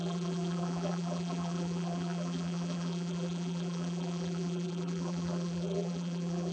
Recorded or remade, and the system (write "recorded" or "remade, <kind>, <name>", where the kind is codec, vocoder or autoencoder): remade, vocoder, BigVGAN v2